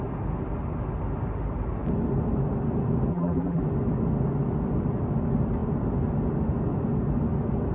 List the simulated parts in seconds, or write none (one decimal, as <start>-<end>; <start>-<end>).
3.1-3.6